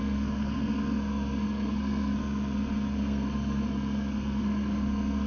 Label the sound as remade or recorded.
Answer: remade